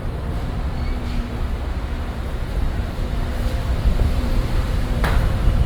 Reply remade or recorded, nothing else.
remade